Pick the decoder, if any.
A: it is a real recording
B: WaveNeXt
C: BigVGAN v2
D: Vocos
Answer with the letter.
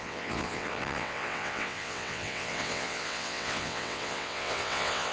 B